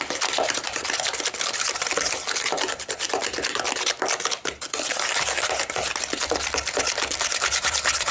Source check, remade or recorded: remade